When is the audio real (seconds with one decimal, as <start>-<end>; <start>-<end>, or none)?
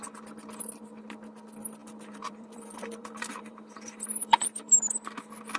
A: 0.0-1.8; 4.7-5.6